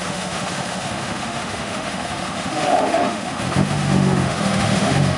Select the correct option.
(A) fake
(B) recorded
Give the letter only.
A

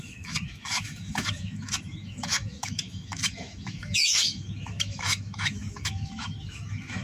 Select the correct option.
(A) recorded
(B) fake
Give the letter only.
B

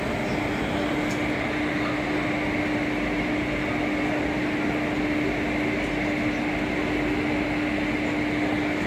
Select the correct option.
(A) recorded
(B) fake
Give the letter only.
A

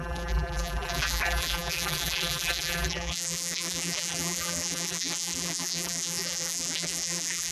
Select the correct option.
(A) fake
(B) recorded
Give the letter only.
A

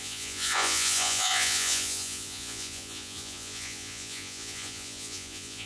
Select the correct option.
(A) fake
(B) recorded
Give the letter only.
A